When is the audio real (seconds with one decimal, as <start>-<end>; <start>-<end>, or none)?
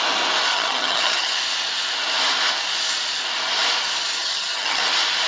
0.0-0.5; 1.4-4.2; 4.8-5.3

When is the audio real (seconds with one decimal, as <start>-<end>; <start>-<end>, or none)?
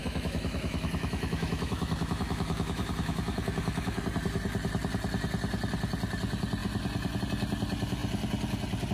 4.0-8.9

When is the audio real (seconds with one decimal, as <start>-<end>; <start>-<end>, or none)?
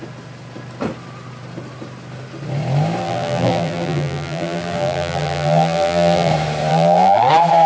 0.0-3.0; 6.3-6.7; 7.3-7.7